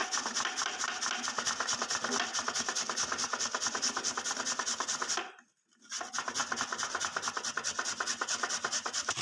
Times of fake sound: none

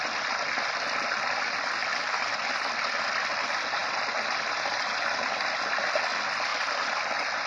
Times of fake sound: 6.5-7.1